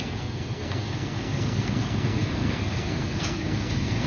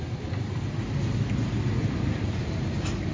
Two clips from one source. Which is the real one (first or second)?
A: second